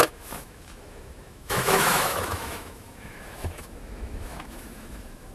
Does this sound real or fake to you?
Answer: fake